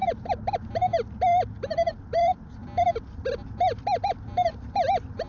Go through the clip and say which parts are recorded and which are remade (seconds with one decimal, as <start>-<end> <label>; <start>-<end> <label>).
0.0-0.9 remade; 0.9-1.6 recorded; 1.6-2.6 remade; 2.6-3.6 recorded; 3.6-5.3 remade